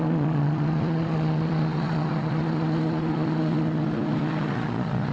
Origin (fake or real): fake